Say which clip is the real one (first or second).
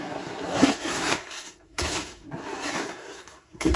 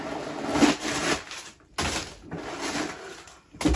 second